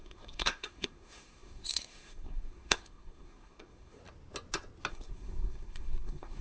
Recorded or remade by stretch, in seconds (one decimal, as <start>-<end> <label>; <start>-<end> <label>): 0.0-4.0 remade; 4.0-4.9 recorded; 4.9-6.4 remade